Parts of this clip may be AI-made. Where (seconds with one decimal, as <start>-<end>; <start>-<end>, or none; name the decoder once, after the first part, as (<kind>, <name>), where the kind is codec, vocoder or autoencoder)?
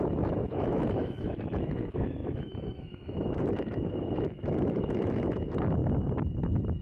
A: 0.0-5.8 (autoencoder, DAC-VAE)